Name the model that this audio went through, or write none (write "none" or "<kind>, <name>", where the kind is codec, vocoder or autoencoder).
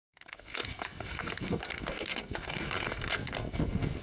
codec, SNAC